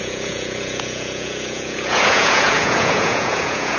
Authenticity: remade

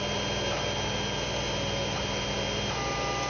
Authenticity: recorded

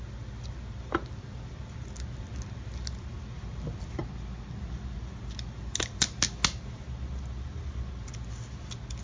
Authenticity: recorded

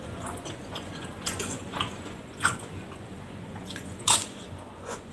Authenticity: remade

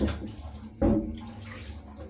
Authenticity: recorded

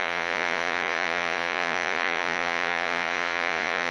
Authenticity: remade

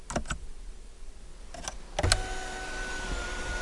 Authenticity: recorded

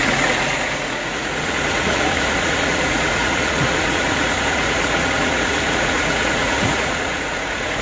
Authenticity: remade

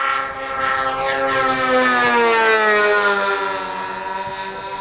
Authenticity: recorded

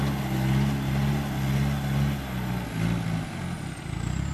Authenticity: recorded